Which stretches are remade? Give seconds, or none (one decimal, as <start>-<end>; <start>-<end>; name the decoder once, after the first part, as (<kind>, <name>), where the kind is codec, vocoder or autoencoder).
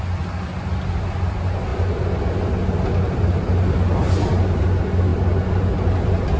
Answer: none